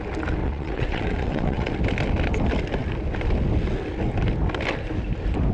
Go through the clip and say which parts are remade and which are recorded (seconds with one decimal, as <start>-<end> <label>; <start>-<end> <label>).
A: 0.0-0.4 recorded; 0.4-1.7 remade; 1.7-5.5 recorded